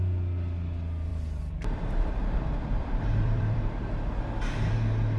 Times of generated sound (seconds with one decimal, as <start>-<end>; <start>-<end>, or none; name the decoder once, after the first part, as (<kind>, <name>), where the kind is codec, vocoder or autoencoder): 1.1-4.2 (vocoder, BigVGAN v2)